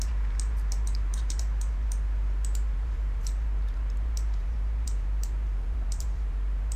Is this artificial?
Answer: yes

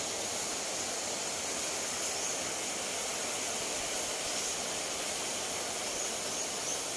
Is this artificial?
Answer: no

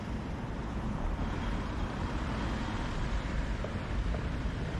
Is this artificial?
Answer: yes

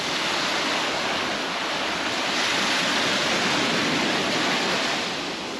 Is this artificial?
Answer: no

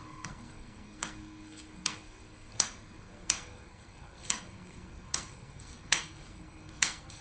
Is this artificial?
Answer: yes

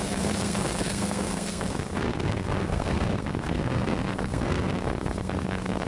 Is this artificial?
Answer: yes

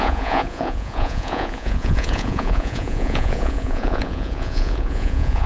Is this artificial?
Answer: yes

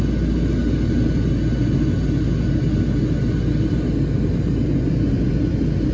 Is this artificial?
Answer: no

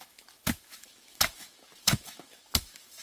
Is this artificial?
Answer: yes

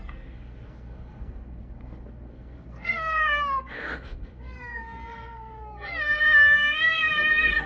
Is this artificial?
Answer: yes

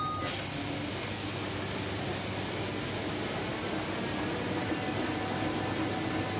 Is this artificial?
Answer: no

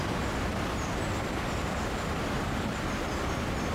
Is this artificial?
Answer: no